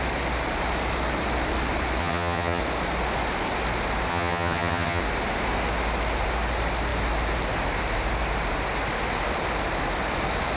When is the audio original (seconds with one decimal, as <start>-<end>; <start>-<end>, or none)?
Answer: 0.0-2.0; 2.6-4.1; 5.0-10.6

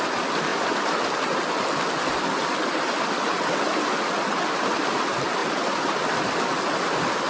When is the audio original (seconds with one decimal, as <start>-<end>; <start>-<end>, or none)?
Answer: 0.0-7.3

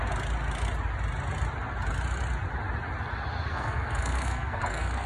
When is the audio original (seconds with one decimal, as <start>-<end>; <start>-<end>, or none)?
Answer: 0.0-3.5

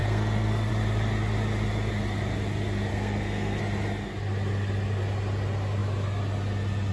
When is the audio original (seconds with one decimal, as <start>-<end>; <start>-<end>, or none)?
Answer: 0.7-2.9; 3.6-6.9